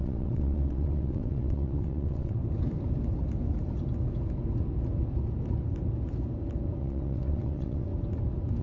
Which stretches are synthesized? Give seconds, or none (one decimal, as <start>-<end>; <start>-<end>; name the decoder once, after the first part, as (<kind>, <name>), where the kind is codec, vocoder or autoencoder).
0.0-2.4 (vocoder, WaveNeXt); 6.8-7.9